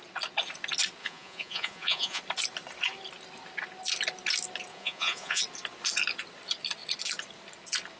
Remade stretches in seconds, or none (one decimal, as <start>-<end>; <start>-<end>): 1.0-2.2; 4.7-5.4

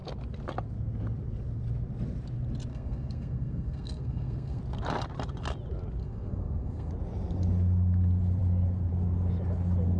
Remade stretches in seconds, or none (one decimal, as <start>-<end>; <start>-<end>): 2.7-4.6; 6.0-6.9